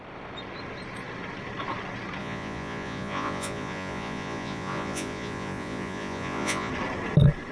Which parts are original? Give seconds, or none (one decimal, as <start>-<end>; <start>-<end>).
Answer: 0.0-2.2; 6.7-7.5